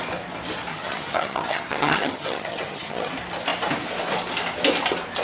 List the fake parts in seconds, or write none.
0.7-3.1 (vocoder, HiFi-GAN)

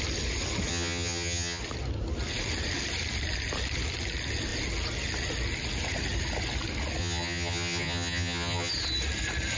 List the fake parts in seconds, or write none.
0.7-1.6 (vocoder, HiFi-GAN); 7.0-8.7